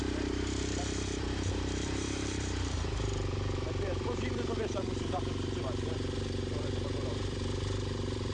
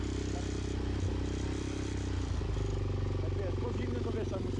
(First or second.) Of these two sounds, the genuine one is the second